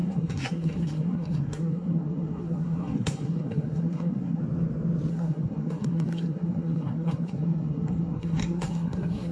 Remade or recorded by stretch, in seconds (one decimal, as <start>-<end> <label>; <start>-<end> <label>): 0.0-4.4 remade; 4.4-5.1 recorded; 5.1-9.3 remade